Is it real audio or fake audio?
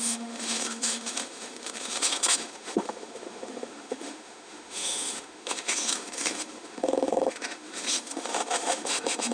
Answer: fake